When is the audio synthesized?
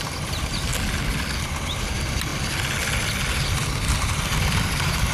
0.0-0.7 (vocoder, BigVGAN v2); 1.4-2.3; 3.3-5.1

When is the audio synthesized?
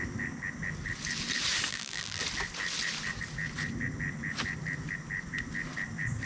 1.7-2.2 (vocoder, BigVGAN v2)